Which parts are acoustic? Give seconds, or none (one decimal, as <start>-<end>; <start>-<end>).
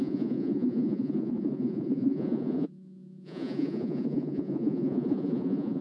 none